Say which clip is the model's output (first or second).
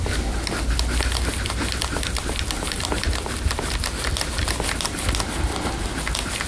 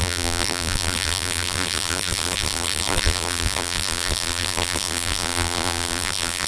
second